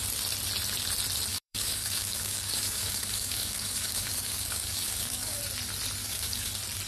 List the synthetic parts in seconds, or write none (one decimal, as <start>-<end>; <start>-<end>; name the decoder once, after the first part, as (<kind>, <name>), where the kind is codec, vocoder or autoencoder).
1.3-5.4 (codec, DAC); 6.0-6.5